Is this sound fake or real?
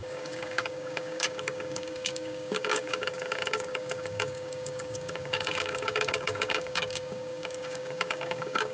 fake